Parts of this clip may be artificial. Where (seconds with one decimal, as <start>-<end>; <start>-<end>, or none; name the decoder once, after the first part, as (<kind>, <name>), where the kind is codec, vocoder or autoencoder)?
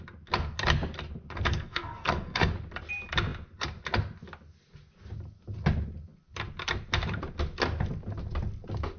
1.5-2.5 (codec, SNAC)